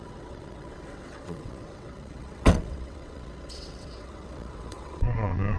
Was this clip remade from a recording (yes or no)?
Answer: yes